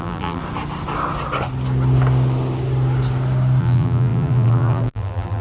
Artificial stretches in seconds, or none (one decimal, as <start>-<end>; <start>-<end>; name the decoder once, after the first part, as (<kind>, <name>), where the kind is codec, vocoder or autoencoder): 0.0-0.4 (vocoder, BigVGAN v2); 3.6-5.4